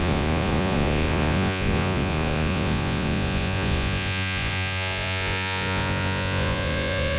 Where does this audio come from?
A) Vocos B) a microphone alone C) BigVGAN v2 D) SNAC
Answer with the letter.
A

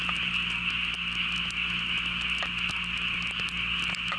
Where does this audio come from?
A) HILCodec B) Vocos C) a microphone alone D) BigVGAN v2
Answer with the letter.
C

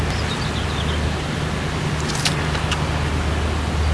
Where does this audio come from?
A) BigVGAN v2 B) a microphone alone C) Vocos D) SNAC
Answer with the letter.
B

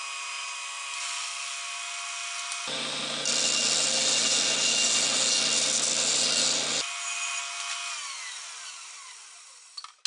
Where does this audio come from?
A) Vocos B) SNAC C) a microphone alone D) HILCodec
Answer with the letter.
C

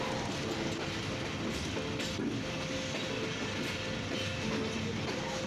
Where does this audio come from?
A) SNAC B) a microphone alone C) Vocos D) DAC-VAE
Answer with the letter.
B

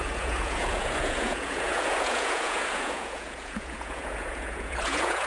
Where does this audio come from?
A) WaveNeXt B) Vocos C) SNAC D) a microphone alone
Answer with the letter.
B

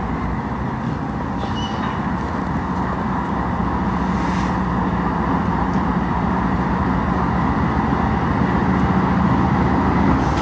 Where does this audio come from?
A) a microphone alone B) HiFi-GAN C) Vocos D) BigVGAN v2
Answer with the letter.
A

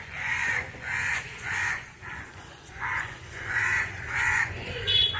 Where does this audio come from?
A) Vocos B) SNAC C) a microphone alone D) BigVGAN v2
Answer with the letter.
A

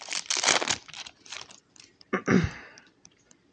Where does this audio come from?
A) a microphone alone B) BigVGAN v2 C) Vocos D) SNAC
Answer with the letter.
A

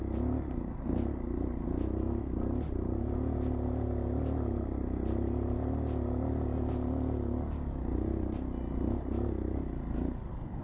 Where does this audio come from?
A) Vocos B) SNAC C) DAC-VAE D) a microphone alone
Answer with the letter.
D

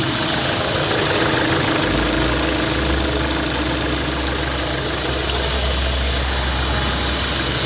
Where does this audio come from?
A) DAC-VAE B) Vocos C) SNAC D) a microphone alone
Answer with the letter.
D